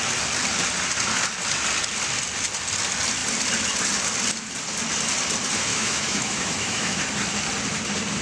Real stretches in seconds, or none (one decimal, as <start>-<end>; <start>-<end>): 0.0-5.7; 7.0-8.2